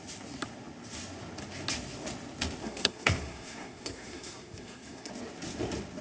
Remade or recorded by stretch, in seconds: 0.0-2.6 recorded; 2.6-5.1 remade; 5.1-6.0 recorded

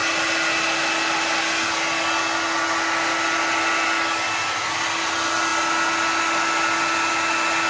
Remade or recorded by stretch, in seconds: 0.0-7.7 recorded

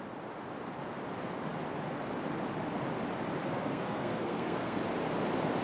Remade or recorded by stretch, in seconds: 0.0-3.4 recorded; 3.4-4.8 remade; 4.8-5.6 recorded